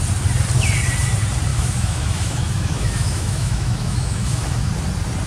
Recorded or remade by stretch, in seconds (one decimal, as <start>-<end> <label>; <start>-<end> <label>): 0.0-1.5 recorded; 1.5-4.7 remade; 4.7-5.3 recorded